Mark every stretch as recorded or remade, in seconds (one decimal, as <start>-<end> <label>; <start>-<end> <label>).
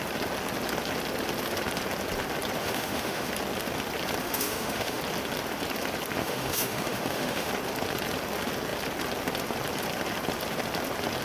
0.0-2.6 recorded; 2.6-3.3 remade; 3.3-4.2 recorded; 4.2-5.0 remade; 5.0-6.2 recorded; 6.2-7.5 remade; 7.5-11.2 recorded